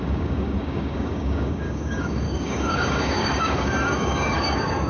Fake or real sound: fake